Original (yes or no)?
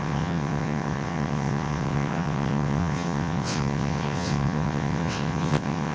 no